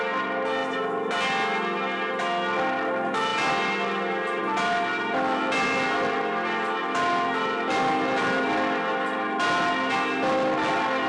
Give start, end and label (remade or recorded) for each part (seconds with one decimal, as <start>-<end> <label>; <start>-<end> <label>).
0.0-11.1 recorded